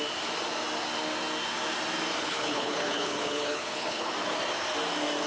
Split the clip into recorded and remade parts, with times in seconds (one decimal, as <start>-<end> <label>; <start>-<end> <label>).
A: 0.0-2.2 recorded; 2.2-4.1 remade; 4.1-5.3 recorded